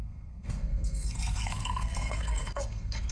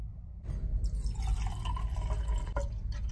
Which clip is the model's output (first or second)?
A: first